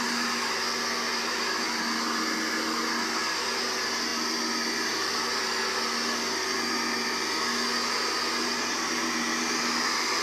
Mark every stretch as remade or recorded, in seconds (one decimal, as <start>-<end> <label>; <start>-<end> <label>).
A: 0.0-10.2 recorded